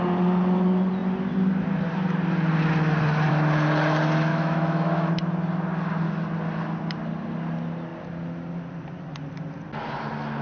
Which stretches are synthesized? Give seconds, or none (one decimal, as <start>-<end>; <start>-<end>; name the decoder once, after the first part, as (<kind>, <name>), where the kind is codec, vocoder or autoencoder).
4.3-5.1 (autoencoder, DAC-VAE)